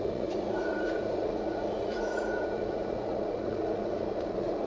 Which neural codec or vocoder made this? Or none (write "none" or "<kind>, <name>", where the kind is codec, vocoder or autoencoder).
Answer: vocoder, Vocos